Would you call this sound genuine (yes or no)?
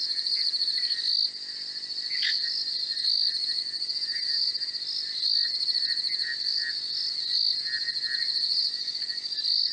yes